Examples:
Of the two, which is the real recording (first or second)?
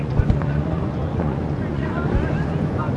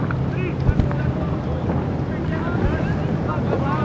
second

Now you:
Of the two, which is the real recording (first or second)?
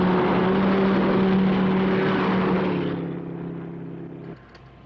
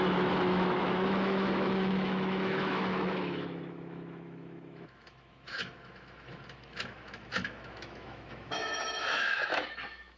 first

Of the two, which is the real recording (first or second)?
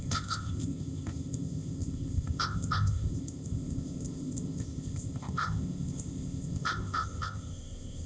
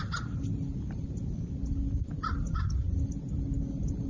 second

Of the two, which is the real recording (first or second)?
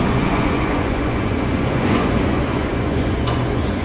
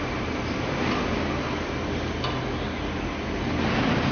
second